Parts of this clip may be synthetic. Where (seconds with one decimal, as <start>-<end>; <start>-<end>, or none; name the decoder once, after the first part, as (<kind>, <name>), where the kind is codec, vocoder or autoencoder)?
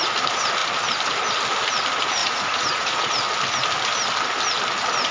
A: 2.2-3.1 (vocoder, Vocos)